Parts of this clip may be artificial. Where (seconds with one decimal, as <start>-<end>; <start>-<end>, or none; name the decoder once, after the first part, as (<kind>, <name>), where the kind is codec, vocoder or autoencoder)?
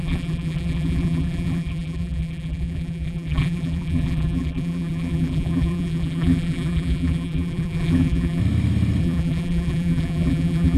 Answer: 0.0-8.4 (vocoder, BigVGAN v2); 9.0-10.8